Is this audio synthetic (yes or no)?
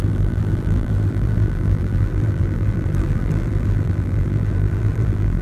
yes